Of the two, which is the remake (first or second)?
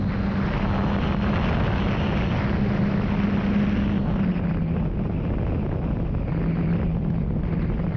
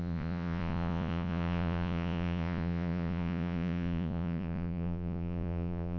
second